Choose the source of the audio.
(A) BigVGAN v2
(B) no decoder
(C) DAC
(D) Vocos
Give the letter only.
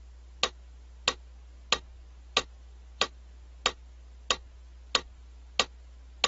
B